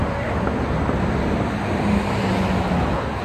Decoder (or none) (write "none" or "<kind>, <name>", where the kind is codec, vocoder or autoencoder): none